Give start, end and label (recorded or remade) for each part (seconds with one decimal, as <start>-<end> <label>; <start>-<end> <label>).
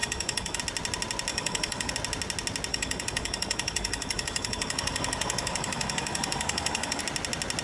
0.0-0.6 remade; 0.6-1.3 recorded; 1.3-1.9 remade; 1.9-2.7 recorded; 2.7-7.0 remade; 7.0-7.6 recorded